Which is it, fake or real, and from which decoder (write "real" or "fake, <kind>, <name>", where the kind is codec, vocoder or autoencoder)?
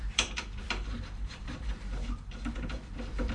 fake, vocoder, BigVGAN v2